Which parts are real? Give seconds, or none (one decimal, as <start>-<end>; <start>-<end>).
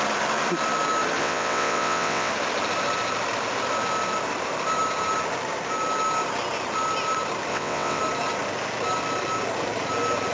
0.0-1.2; 2.3-7.5; 8.0-10.3